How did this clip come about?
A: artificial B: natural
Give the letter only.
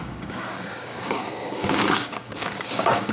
A